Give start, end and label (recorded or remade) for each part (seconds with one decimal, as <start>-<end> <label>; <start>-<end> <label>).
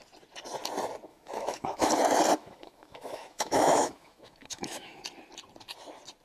0.0-1.1 recorded; 1.1-1.9 remade; 1.9-2.4 recorded; 2.4-5.0 remade; 5.0-6.2 recorded